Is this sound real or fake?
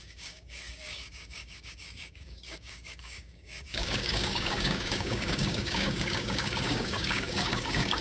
fake